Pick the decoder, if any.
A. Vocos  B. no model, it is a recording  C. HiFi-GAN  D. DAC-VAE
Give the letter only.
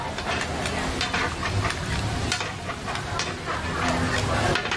B